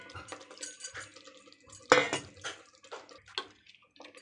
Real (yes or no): yes